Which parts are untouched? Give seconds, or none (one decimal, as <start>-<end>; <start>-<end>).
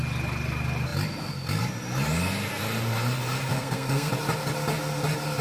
0.0-3.5; 4.1-5.4